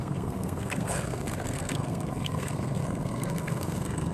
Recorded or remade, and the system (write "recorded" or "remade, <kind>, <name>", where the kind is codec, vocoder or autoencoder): remade, codec, SNAC